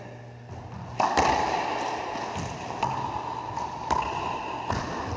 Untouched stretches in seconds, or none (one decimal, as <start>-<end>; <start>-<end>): 0.0-5.2